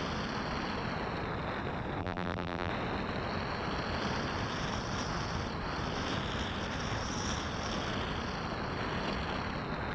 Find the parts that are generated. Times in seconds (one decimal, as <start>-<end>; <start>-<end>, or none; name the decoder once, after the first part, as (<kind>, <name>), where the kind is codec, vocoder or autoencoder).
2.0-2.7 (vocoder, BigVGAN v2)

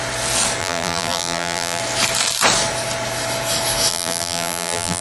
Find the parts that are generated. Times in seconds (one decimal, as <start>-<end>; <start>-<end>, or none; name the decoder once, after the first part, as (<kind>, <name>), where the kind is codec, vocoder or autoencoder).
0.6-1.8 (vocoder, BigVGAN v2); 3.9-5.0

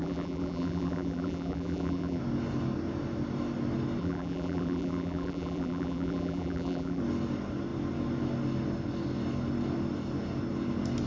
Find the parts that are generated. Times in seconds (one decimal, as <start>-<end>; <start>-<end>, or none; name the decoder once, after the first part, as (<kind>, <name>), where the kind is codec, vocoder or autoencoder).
0.0-2.2 (vocoder, BigVGAN v2); 4.0-7.0